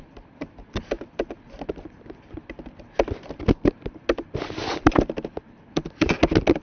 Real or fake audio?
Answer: real